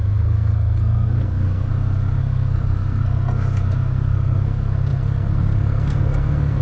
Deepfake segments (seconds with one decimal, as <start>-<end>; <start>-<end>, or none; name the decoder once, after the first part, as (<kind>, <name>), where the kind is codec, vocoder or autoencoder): 0.0-1.7 (codec, SNAC); 2.2-6.6

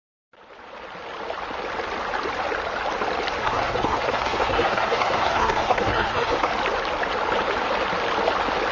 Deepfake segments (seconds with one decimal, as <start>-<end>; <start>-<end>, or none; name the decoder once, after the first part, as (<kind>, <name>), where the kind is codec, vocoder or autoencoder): 3.4-6.5 (codec, SNAC)

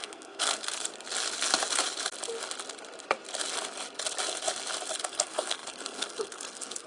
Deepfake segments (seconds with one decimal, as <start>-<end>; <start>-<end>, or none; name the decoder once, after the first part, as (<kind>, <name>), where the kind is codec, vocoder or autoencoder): 0.0-0.9 (codec, SNAC); 5.0-6.9